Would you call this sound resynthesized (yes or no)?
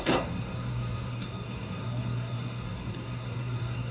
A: yes